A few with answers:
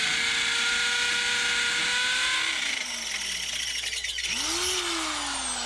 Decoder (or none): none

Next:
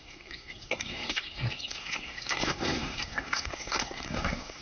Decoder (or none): codec, SNAC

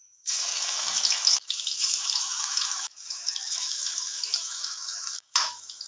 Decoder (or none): autoencoder, DAC-VAE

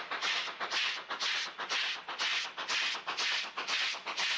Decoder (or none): none